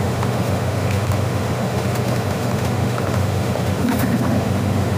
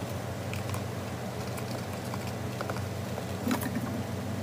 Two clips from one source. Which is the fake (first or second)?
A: first